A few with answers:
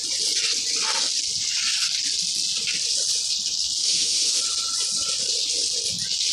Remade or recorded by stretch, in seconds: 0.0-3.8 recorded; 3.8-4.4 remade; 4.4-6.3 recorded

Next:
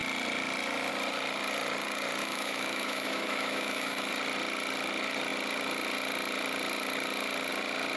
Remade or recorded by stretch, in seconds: 0.0-2.2 recorded; 2.2-4.1 remade; 4.1-8.0 recorded

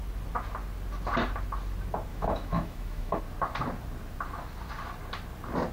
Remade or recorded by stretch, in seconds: 0.0-2.1 recorded; 2.1-3.2 remade; 3.2-5.7 recorded